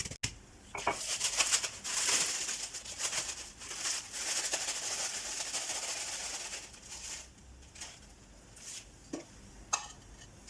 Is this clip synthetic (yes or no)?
no